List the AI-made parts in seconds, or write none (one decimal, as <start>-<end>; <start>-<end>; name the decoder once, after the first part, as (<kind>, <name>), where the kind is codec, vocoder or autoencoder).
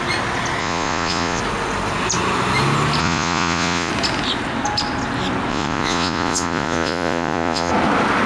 0.6-1.4 (vocoder, Vocos); 3.0-3.9; 5.5-7.7